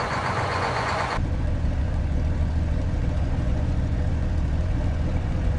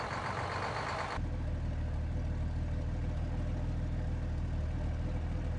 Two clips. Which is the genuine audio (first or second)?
second